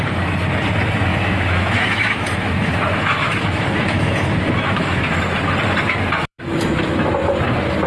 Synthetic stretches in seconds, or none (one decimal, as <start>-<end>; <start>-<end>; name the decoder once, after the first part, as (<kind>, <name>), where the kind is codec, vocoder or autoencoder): 1.1-5.1 (autoencoder, DAC-VAE); 6.2-7.1